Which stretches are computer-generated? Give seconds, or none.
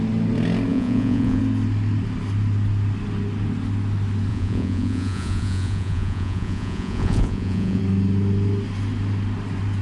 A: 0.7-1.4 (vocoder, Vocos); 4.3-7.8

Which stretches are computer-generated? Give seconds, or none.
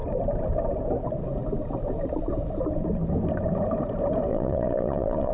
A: 4.3-5.3 (vocoder, Vocos)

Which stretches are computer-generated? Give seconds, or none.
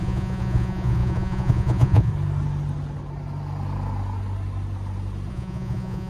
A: 0.0-2.1 (vocoder, Vocos); 5.3-6.1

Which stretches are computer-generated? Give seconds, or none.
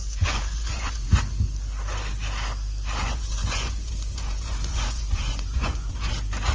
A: 0.0-1.2 (vocoder, Vocos); 3.0-6.1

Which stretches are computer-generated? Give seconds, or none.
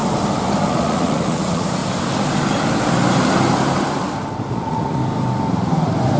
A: 0.6-1.8 (vocoder, Vocos); 4.5-5.0